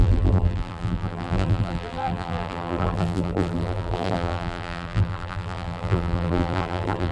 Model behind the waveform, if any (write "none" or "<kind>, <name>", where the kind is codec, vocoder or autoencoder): vocoder, BigVGAN v2